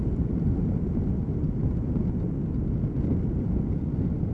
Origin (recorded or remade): recorded